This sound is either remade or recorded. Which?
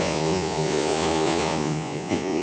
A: remade